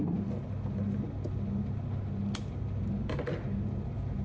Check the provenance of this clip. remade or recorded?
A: recorded